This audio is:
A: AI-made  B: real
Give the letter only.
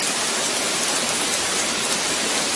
B